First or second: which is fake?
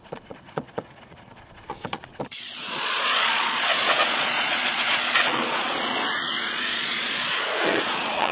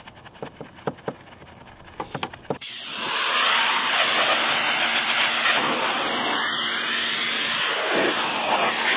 first